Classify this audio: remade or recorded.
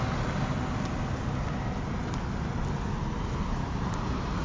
recorded